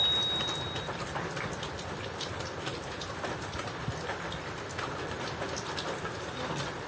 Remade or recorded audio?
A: recorded